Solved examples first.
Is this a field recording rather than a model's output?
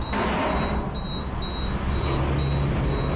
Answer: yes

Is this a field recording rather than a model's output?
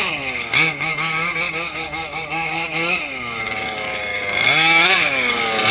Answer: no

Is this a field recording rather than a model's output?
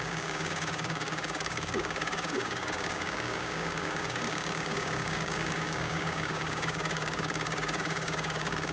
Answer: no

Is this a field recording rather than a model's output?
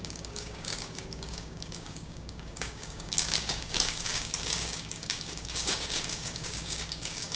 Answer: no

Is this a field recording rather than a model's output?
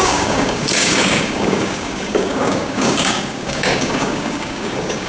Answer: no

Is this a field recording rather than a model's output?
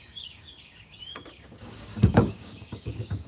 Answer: no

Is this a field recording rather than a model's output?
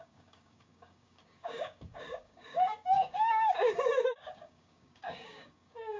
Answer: no